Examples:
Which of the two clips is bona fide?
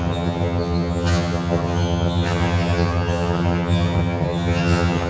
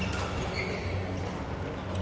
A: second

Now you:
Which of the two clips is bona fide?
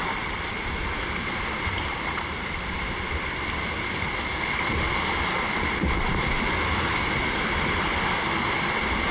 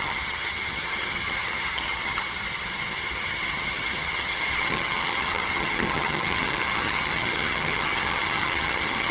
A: first